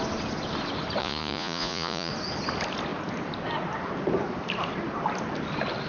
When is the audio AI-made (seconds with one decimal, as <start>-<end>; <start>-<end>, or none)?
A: 1.0-2.1

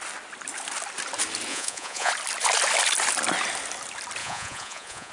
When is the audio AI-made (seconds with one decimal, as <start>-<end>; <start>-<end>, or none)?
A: 1.5-2.1; 4.2-5.1

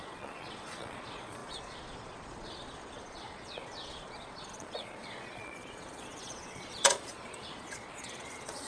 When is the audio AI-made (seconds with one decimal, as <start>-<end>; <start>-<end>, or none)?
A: 0.0-8.7